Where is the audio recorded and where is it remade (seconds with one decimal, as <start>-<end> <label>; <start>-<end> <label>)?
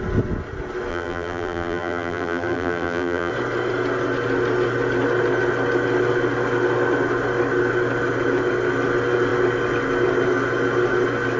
0.0-0.9 recorded; 0.9-3.3 remade; 3.3-11.4 recorded